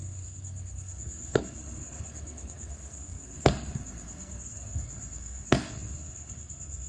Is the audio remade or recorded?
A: remade